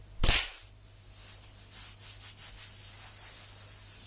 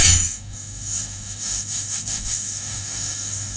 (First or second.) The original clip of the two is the first